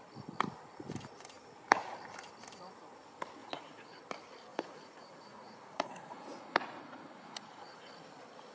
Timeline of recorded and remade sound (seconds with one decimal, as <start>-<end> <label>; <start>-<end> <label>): 0.0-3.4 recorded; 3.4-4.0 remade; 4.0-4.5 recorded; 4.5-7.9 remade; 7.9-8.5 recorded